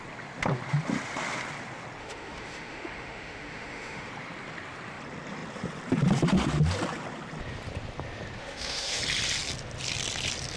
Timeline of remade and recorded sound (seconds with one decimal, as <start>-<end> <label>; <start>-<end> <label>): 0.0-2.0 recorded; 2.0-4.1 remade; 4.1-8.4 recorded; 8.4-9.0 remade; 9.0-10.6 recorded